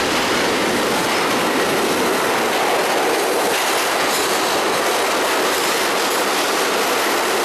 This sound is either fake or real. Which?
real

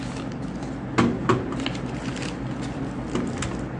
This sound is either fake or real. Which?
real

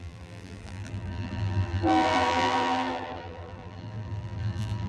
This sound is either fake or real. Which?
fake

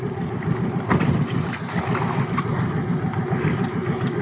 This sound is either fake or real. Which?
real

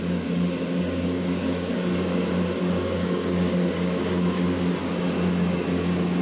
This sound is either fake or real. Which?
fake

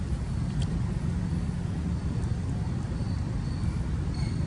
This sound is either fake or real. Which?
real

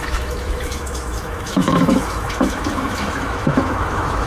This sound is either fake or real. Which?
fake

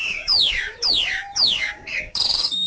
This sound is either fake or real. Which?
fake